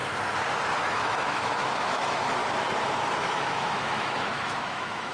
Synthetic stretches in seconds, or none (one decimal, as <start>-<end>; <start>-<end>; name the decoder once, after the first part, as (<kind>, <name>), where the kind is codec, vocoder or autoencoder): 0.7-2.4 (autoencoder, DAC-VAE); 3.2-5.1

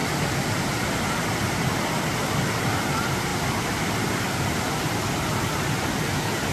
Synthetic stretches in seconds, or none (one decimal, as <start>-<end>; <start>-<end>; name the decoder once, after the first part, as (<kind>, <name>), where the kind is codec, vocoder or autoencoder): none

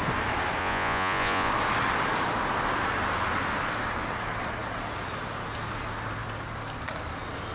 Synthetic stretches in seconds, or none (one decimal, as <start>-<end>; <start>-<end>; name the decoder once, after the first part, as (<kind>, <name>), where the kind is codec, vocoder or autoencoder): 0.6-1.5 (vocoder, Vocos)

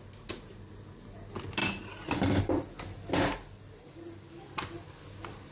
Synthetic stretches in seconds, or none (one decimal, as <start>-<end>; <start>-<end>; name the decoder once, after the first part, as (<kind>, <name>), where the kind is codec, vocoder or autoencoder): none

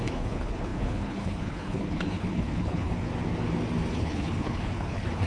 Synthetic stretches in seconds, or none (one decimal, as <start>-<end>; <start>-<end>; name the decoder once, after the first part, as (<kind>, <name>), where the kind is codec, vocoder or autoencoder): 0.0-3.1 (codec, HILCodec); 3.9-5.3